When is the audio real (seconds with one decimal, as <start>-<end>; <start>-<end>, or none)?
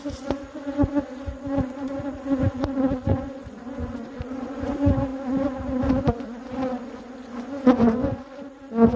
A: 5.1-6.0